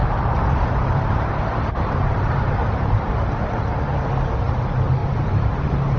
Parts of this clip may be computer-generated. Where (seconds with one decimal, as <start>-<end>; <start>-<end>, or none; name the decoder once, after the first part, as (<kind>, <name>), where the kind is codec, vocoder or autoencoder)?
0.0-3.6 (vocoder, BigVGAN v2); 5.0-6.0